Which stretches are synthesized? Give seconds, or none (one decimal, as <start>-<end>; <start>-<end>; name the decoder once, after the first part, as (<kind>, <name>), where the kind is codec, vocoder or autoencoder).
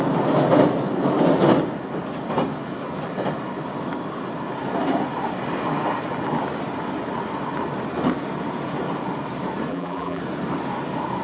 9.7-10.2 (vocoder, BigVGAN v2)